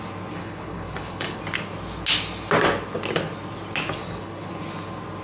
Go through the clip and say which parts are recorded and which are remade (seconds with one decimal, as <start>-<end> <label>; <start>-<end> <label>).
0.0-0.4 recorded; 0.4-1.4 remade; 1.4-4.0 recorded; 4.0-4.5 remade; 4.5-5.2 recorded